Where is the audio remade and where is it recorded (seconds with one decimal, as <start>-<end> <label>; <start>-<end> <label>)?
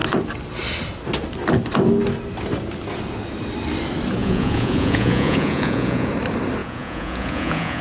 0.0-4.2 recorded; 4.2-6.1 remade; 6.1-6.6 recorded; 6.6-7.8 remade